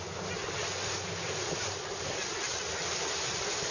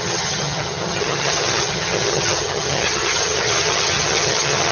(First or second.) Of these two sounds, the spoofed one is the second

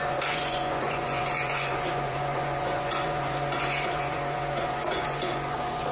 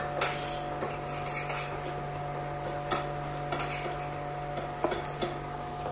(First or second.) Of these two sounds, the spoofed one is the first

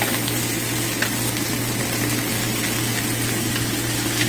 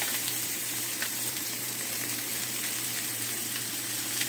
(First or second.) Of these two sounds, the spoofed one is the second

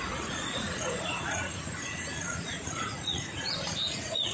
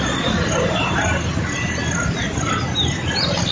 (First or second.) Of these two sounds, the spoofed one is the first